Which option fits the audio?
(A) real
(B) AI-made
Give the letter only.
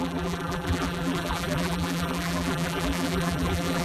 B